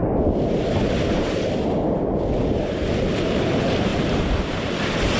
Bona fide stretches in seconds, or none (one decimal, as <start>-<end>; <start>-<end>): 0.0-3.9; 4.7-5.2